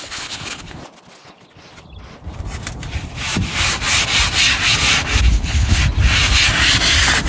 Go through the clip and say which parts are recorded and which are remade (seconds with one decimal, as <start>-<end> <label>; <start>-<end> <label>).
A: 0.0-0.8 remade; 0.8-5.2 recorded; 5.2-5.8 remade; 5.8-7.3 recorded